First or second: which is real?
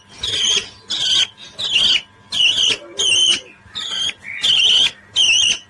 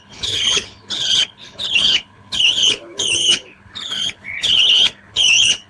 first